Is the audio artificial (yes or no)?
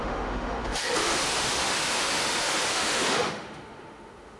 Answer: yes